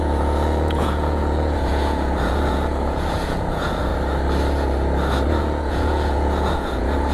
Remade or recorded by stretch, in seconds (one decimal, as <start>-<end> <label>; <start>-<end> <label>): 0.0-3.9 remade; 3.9-5.4 recorded; 5.4-7.1 remade